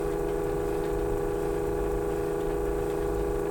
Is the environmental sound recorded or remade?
recorded